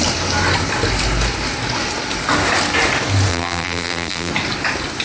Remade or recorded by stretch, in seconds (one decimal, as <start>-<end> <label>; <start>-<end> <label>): 0.0-3.3 recorded; 3.3-4.3 remade; 4.3-5.0 recorded